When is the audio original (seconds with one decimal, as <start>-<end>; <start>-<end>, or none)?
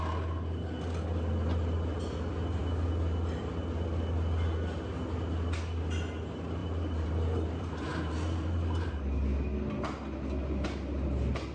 0.0-6.6; 9.0-11.5